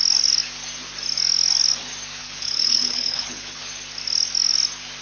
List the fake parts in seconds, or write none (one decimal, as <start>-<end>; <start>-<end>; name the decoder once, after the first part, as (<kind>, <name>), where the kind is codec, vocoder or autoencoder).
2.2-3.6 (codec, HILCodec)